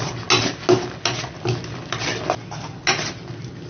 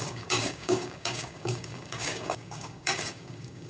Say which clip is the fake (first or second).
second